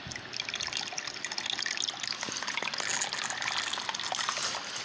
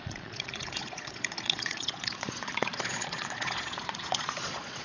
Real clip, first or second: first